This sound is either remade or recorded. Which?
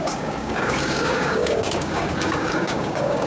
remade